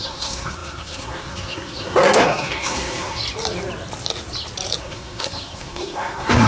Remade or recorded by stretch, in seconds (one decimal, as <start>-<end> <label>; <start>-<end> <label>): 0.0-3.2 remade; 3.2-4.8 recorded; 4.8-6.5 remade